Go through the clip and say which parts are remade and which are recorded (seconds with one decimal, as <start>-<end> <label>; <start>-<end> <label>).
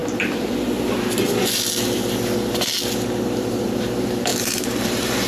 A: 0.0-3.2 recorded; 3.2-5.3 remade